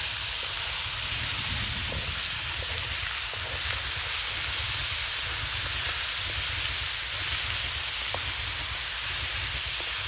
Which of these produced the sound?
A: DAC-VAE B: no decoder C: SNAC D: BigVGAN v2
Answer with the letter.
B